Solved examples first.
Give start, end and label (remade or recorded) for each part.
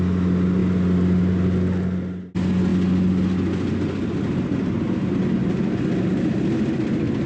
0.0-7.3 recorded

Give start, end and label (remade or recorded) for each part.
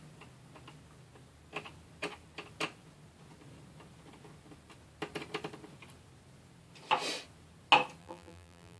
0.0-8.0 recorded; 8.0-8.8 remade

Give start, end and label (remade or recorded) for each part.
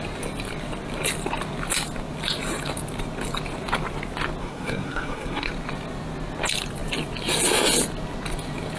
0.0-4.4 recorded; 4.4-5.5 remade; 5.5-8.8 recorded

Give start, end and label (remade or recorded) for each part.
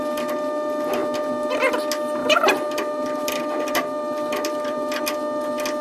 0.0-2.2 recorded; 2.2-5.0 remade; 5.0-5.8 recorded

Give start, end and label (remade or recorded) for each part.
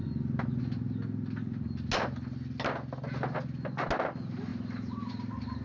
0.0-5.6 recorded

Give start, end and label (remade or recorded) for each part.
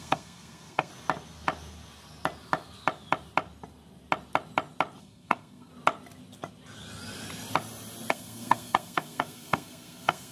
0.0-0.9 remade; 0.9-5.0 recorded; 5.0-5.7 remade; 5.7-8.1 recorded; 8.1-10.3 remade